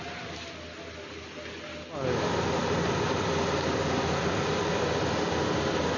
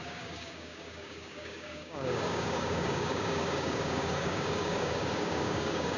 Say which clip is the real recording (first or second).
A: first